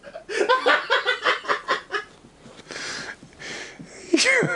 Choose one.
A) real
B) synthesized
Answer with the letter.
A